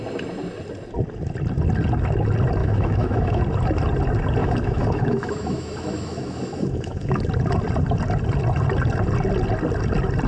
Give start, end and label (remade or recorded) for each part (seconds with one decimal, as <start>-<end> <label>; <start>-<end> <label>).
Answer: 0.0-2.6 recorded; 2.6-3.4 remade; 3.4-4.4 recorded; 4.4-7.2 remade; 7.2-10.3 recorded